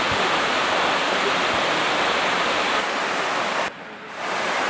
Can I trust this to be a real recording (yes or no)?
no